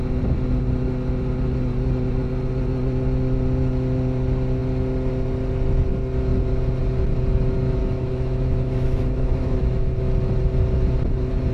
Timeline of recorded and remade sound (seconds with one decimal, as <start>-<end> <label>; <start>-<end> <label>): 0.0-7.8 recorded; 7.8-10.0 remade; 10.0-11.5 recorded